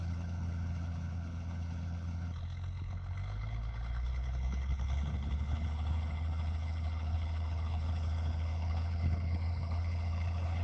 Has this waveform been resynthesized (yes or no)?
yes